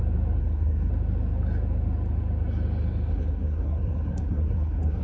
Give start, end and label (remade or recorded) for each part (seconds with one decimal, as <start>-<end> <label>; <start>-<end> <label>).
0.0-0.4 recorded; 0.4-0.9 remade; 0.9-3.1 recorded; 3.1-5.0 remade